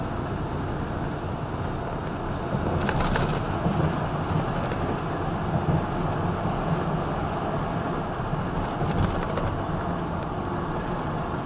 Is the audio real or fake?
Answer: real